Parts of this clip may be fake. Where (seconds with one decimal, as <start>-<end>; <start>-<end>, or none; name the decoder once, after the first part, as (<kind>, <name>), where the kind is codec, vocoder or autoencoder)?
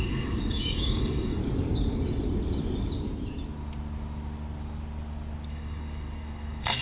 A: 0.0-1.4 (codec, DAC); 5.5-6.8